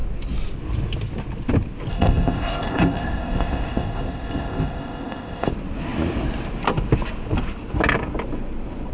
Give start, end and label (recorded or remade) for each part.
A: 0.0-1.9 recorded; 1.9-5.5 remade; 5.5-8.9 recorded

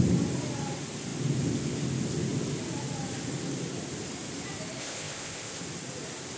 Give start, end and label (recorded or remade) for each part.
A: 0.0-4.8 recorded; 4.8-5.6 remade; 5.6-6.4 recorded

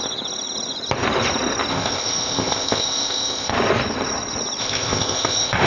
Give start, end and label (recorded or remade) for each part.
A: 0.0-1.7 recorded; 1.7-3.5 remade; 3.5-4.6 recorded; 4.6-5.7 remade